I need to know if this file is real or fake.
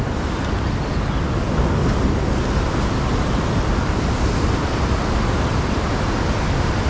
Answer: real